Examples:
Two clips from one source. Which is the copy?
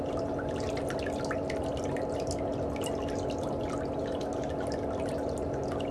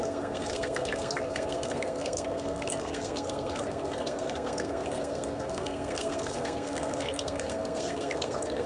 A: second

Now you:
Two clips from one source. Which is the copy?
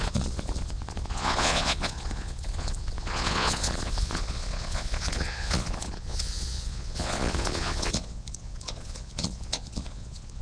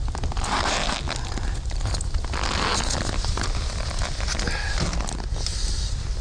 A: first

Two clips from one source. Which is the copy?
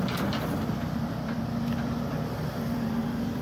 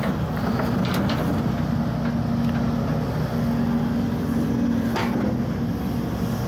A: first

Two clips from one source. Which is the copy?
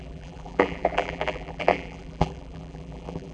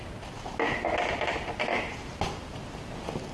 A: first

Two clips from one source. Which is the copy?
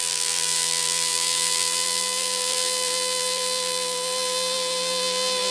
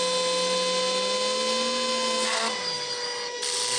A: first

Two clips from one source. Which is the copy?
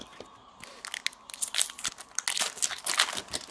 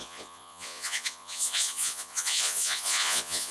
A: second